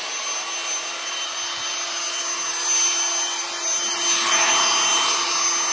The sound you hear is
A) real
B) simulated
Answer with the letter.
A